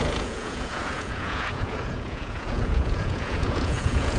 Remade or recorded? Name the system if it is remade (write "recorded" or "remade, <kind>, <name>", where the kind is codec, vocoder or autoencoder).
remade, vocoder, Vocos